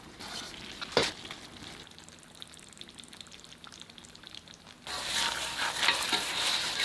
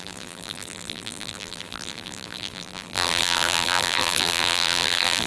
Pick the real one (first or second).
first